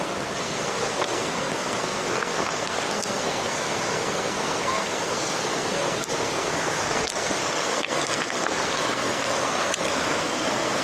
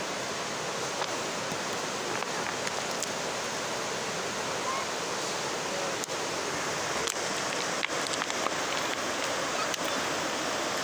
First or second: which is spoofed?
first